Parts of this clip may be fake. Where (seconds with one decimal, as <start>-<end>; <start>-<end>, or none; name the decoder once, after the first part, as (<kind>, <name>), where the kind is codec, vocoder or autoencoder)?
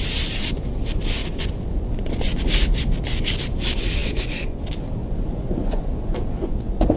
1.2-2.4 (vocoder, Vocos); 4.0-4.6; 5.0-7.0